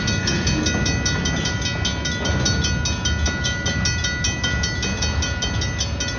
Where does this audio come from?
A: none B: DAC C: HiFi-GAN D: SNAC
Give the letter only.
A